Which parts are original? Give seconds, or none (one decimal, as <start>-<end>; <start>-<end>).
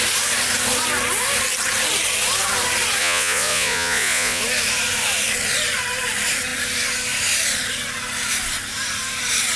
0.0-3.0; 4.4-9.6